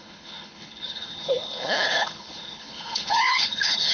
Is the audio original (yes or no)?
no